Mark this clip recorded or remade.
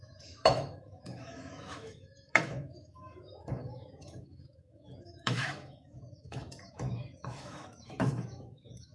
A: remade